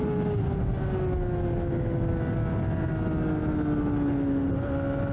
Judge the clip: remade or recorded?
recorded